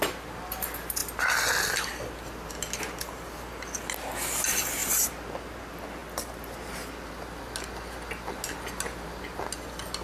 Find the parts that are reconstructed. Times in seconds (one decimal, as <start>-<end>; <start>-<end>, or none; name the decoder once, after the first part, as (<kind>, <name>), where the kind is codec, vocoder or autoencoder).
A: none